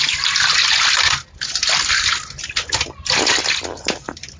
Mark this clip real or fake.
real